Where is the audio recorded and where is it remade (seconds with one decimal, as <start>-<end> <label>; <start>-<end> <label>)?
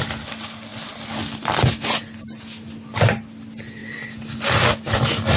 0.0-5.4 recorded